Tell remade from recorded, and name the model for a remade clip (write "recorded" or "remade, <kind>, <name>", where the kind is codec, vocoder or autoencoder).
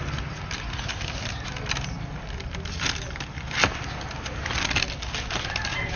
recorded